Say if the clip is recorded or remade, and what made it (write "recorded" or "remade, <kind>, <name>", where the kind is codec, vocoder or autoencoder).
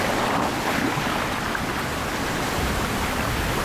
recorded